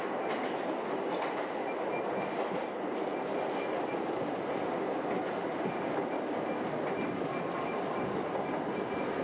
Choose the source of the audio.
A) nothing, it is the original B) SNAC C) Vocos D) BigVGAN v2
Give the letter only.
A